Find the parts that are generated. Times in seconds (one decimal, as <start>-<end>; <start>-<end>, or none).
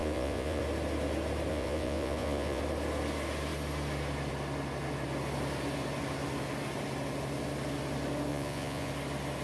0.0-0.6; 1.5-2.6; 8.3-8.9